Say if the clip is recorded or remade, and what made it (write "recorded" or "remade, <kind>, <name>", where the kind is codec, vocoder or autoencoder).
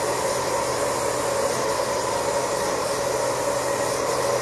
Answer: recorded